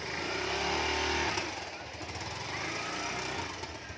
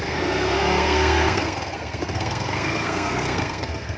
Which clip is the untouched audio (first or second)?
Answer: first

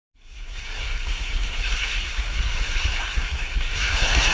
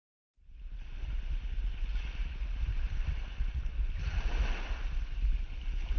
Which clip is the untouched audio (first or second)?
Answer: second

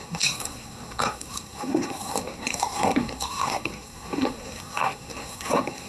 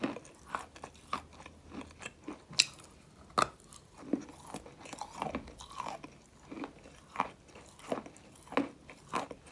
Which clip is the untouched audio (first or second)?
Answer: second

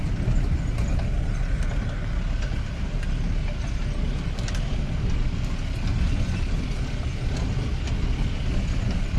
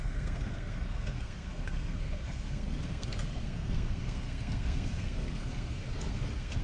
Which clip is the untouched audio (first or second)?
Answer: first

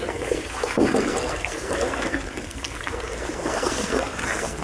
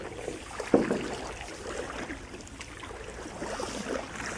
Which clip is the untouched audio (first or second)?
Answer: second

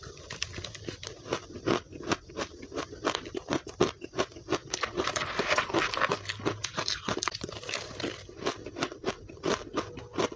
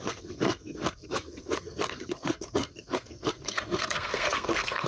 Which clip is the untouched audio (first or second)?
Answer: first